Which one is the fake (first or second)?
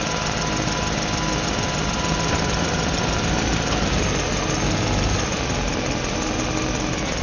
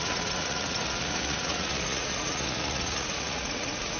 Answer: second